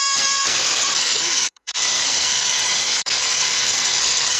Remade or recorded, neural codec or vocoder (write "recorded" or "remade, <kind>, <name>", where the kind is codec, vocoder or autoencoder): remade, codec, SNAC